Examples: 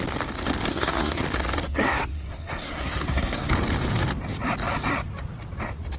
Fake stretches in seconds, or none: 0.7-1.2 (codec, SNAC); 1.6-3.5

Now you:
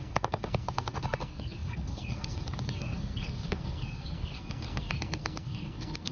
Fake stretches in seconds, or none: 0.0-6.1 (codec, SNAC)